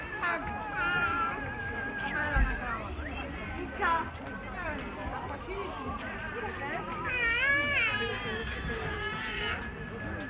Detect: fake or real real